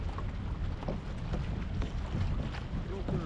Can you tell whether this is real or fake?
real